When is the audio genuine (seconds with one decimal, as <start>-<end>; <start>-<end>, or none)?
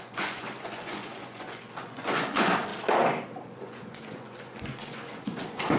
2.7-3.4